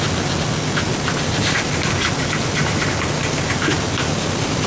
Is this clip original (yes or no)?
yes